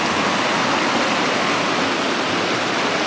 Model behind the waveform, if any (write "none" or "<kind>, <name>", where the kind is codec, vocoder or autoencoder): none